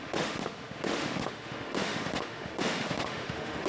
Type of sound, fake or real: fake